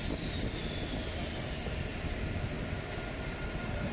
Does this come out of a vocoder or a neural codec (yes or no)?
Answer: no